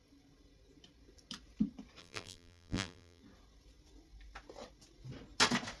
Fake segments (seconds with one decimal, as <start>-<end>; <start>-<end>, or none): 2.0-3.2